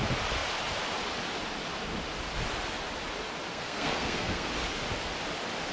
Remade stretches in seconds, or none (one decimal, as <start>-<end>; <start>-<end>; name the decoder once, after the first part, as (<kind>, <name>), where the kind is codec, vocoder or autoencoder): 3.5-4.5 (codec, SNAC)